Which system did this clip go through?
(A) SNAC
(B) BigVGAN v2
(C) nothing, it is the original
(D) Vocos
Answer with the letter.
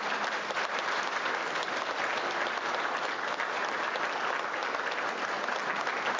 C